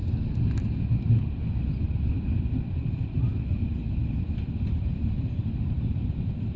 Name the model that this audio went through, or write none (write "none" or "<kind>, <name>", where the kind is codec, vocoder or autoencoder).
none